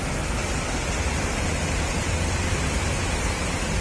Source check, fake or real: real